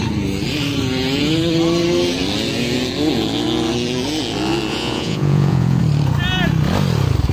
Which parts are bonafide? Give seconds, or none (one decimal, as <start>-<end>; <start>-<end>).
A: 0.0-4.7; 5.8-7.3